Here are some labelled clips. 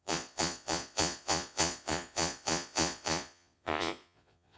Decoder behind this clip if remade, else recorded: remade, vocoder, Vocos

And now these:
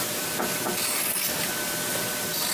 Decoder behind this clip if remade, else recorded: recorded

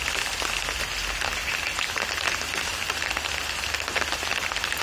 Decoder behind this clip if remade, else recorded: recorded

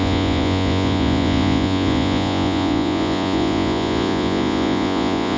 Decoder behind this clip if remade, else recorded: remade, vocoder, Vocos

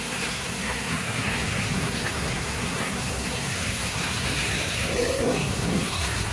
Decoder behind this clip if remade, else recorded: remade, codec, SNAC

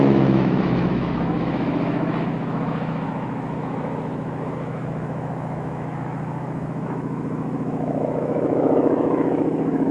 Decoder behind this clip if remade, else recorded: remade, autoencoder, DAC-VAE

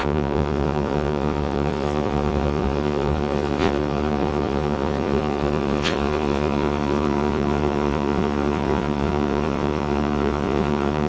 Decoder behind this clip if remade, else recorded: remade, vocoder, Vocos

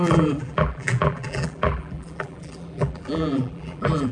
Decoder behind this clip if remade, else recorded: remade, vocoder, BigVGAN v2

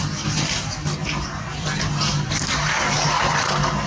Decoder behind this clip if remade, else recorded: recorded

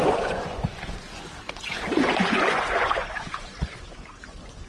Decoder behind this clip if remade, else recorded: remade, vocoder, Vocos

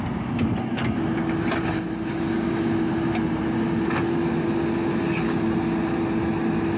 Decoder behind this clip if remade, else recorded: recorded